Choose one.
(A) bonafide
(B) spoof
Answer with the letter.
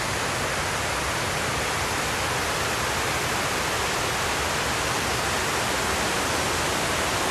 A